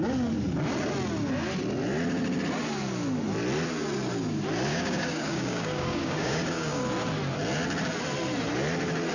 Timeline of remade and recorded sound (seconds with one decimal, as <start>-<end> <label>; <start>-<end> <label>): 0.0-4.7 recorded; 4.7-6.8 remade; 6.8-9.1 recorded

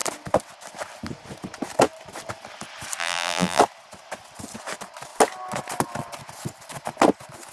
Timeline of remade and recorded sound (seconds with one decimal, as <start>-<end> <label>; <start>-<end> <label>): 0.0-3.0 recorded; 3.0-3.6 remade; 3.6-7.5 recorded

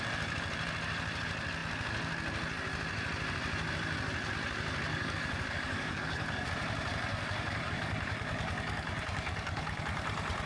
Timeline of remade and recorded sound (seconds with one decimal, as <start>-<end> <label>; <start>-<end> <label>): 0.0-4.9 recorded; 4.9-6.5 remade; 6.5-7.1 recorded; 7.1-9.8 remade; 9.8-10.5 recorded

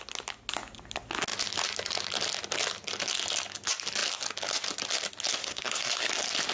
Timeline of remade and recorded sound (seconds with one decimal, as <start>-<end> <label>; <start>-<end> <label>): 0.0-5.4 recorded; 5.4-6.1 remade; 6.1-6.5 recorded

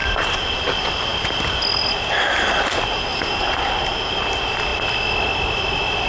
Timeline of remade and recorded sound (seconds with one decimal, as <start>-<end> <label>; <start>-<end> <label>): 0.0-6.1 recorded

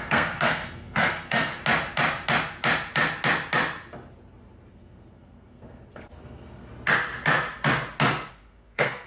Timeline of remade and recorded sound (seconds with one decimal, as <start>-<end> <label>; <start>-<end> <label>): 0.0-1.6 remade; 1.6-4.7 recorded; 4.7-6.7 remade; 6.7-8.3 recorded; 8.3-9.1 remade